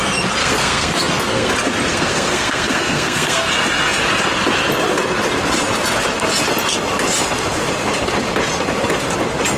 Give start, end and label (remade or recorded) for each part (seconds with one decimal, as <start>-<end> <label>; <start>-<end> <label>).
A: 0.0-0.4 recorded; 0.4-1.5 remade; 1.5-1.9 recorded; 1.9-3.5 remade; 3.5-9.6 recorded